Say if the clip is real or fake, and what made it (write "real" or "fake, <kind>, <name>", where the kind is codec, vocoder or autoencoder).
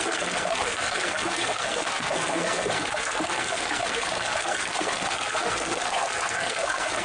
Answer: fake, codec, SNAC